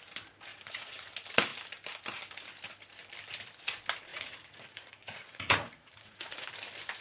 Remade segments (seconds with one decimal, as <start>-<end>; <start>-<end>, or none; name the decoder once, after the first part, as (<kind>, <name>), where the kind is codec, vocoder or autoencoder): 0.5-1.1 (vocoder, Vocos); 4.1-6.5